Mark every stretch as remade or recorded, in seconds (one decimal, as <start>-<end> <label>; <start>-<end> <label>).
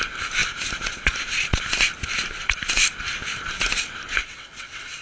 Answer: 0.0-4.2 recorded; 4.2-5.0 remade